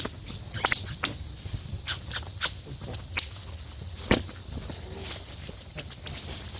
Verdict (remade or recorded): recorded